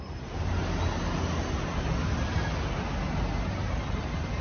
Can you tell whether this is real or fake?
real